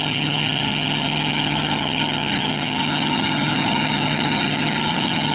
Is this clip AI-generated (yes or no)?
yes